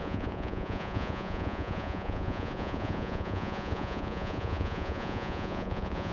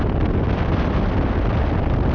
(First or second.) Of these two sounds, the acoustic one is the second